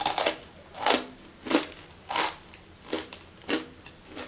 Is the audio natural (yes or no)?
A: yes